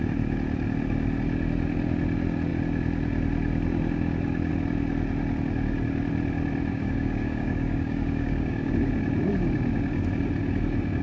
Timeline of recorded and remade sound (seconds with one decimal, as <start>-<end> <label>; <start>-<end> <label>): 0.0-6.7 recorded; 6.7-8.7 remade; 8.7-11.0 recorded